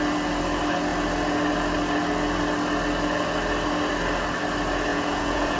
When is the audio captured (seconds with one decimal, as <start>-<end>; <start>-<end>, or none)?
0.0-4.9